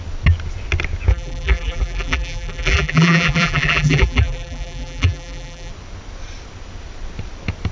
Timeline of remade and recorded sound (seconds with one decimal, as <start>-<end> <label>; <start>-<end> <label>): 0.0-1.1 recorded; 1.1-5.7 remade; 5.7-7.7 recorded